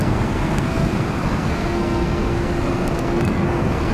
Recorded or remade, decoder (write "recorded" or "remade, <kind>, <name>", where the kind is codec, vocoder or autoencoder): remade, codec, SNAC